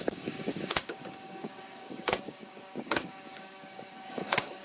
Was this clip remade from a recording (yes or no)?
yes